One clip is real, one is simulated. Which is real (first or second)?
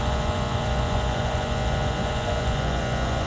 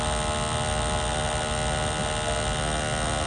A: second